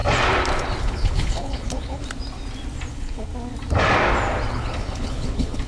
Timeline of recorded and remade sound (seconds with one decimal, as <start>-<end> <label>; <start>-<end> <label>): 0.0-0.8 recorded; 0.8-2.0 remade; 2.0-2.9 recorded; 2.9-3.3 remade; 3.3-4.5 recorded; 4.5-5.7 remade